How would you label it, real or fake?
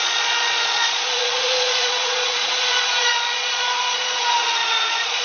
fake